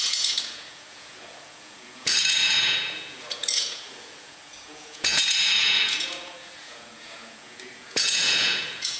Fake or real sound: fake